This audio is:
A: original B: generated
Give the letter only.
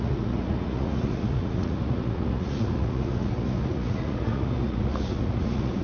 B